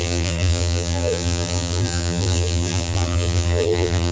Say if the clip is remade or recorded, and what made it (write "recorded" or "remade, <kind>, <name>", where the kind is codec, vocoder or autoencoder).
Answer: remade, vocoder, BigVGAN v2